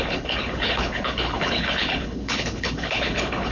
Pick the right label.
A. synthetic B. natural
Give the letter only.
A